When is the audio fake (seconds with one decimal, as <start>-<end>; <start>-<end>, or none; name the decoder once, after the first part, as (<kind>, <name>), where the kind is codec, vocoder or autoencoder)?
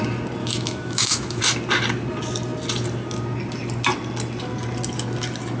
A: 0.4-1.4 (autoencoder, DAC-VAE)